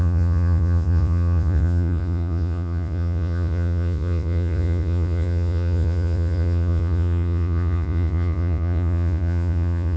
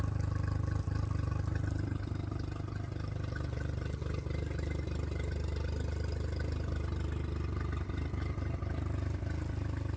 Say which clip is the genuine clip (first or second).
second